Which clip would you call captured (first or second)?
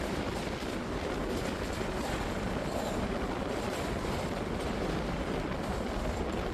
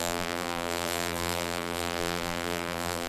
first